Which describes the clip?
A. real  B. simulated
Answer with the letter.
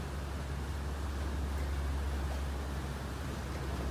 A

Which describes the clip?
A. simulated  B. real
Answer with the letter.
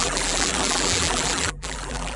A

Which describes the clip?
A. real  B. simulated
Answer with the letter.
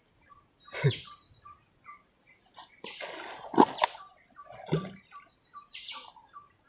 A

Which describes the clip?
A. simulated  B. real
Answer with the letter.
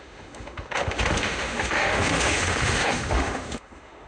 A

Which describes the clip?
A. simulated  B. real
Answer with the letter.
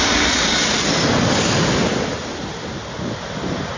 B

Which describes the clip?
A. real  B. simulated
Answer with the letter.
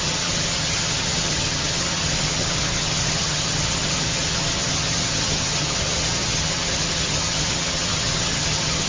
B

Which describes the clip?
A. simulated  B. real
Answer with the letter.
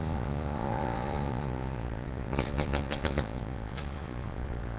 A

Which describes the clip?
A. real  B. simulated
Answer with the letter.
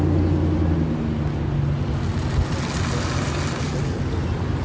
A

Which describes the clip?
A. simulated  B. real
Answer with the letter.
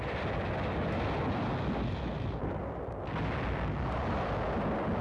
B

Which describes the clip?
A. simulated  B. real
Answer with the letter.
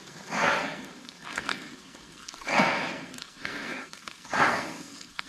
A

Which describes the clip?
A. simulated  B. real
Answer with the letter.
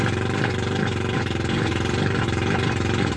A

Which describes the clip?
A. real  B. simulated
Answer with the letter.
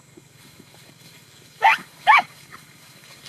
B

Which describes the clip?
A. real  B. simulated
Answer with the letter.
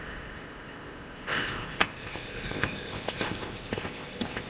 B